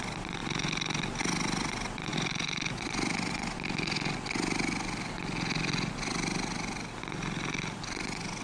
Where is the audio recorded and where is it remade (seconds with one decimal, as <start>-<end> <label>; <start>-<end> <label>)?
0.0-8.4 recorded